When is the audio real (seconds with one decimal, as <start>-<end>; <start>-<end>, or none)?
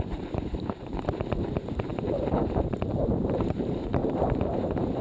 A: none